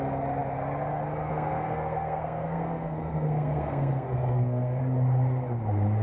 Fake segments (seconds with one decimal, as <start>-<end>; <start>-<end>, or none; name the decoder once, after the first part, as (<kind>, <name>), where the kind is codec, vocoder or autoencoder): 1.3-4.8 (codec, SNAC)